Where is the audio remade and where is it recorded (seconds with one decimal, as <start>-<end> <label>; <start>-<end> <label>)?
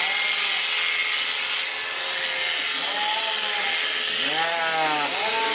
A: 0.0-5.5 recorded